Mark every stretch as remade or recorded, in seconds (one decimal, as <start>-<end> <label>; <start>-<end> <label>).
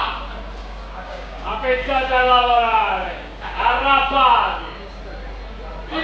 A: 0.0-0.6 recorded; 0.6-3.8 remade; 3.8-4.5 recorded; 4.5-5.0 remade; 5.0-6.0 recorded